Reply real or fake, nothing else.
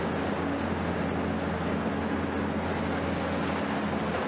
real